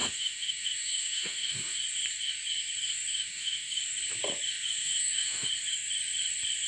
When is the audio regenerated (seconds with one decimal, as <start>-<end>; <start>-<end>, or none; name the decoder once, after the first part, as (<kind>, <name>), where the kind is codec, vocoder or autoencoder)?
0.0-1.8 (autoencoder, DAC-VAE); 3.1-3.8; 4.8-5.5